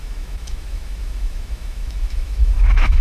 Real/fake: fake